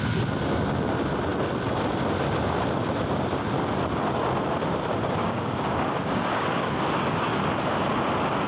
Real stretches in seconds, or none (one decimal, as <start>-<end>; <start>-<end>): 0.0-5.2; 7.4-8.5